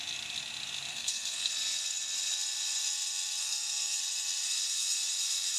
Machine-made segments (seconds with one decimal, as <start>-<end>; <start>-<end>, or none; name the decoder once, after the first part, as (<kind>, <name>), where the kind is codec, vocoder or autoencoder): 0.9-1.5 (codec, SNAC); 3.4-4.0

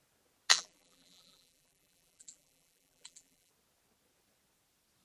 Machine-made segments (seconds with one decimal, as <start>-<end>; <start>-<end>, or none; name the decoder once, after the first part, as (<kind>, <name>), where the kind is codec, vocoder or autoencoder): 0.5-3.5 (vocoder, BigVGAN v2)

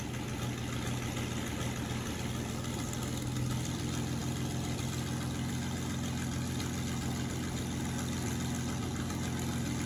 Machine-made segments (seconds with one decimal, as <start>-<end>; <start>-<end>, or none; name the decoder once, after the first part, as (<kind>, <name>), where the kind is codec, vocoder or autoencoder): none

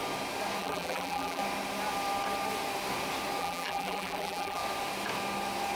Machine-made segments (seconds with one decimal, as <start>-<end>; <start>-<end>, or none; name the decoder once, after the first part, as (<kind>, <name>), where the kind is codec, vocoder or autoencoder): 0.6-1.4 (vocoder, BigVGAN v2); 3.4-4.6

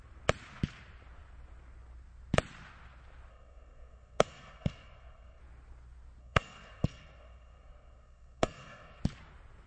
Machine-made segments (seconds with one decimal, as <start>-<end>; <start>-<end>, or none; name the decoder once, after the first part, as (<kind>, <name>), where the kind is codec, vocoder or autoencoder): 3.3-5.4 (codec, SNAC); 6.2-9.0

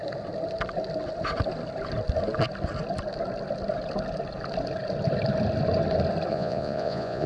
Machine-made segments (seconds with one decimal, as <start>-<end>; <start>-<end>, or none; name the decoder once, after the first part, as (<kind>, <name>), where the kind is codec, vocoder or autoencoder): 6.3-7.3 (vocoder, Vocos)

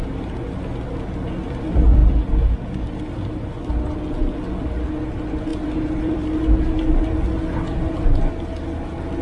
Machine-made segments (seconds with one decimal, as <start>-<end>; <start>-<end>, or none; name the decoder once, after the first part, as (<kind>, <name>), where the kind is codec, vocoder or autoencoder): 5.5-6.3 (vocoder, BigVGAN v2)